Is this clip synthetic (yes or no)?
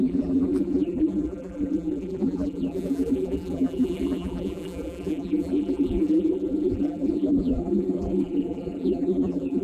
yes